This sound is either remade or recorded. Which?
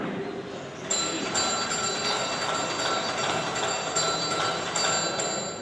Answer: recorded